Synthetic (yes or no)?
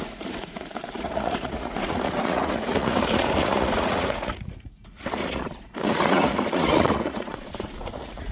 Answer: yes